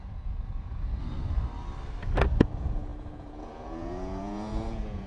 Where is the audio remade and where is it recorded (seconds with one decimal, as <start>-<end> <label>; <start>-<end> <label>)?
0.0-1.0 remade; 1.0-2.4 recorded; 2.4-5.1 remade